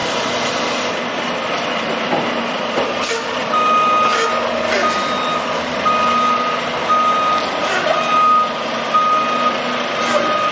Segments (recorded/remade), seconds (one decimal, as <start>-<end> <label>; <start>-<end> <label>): 0.0-10.5 recorded